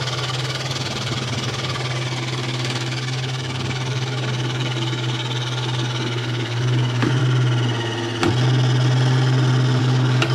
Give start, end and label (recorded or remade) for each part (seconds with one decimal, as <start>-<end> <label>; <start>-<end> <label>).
0.0-7.2 remade; 7.2-9.8 recorded; 9.8-10.3 remade